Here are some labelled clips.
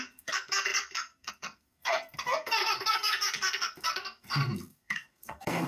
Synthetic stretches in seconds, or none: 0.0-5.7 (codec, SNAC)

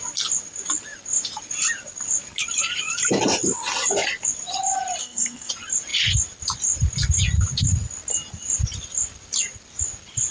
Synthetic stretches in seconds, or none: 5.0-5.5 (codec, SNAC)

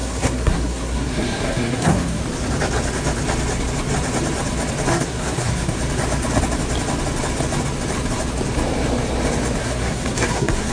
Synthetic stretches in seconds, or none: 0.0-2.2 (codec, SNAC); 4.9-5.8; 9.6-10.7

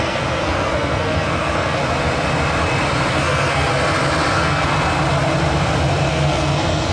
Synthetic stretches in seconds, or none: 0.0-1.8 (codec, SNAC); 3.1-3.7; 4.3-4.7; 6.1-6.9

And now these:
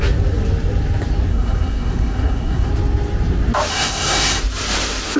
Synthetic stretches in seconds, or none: 1.3-2.7 (codec, SNAC); 3.7-4.4

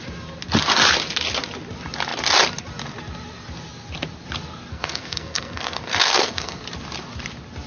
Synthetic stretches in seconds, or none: 4.7-6.6 (codec, SNAC)

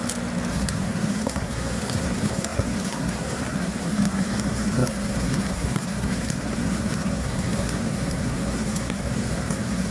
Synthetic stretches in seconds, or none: 0.5-9.9 (codec, SNAC)

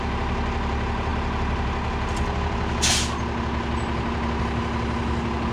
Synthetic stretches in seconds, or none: none